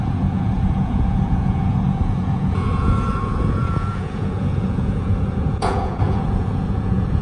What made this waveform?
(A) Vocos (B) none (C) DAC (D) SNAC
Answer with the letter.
A